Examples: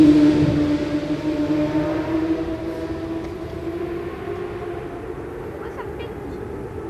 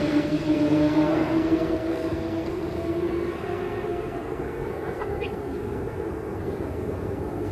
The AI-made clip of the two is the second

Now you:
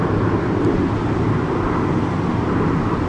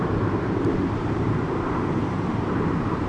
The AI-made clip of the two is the second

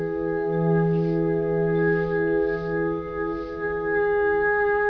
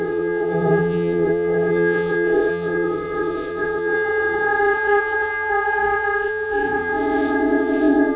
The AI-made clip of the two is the second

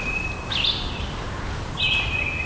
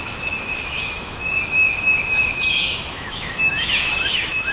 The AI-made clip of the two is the second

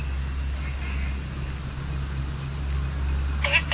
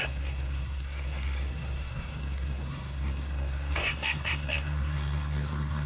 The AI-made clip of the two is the second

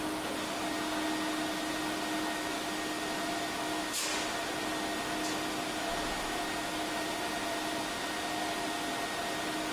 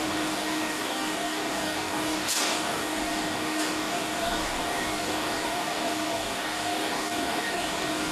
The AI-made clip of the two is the second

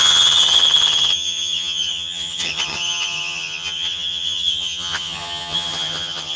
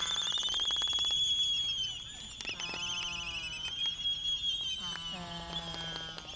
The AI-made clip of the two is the first